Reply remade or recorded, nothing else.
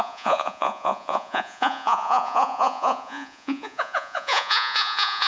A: remade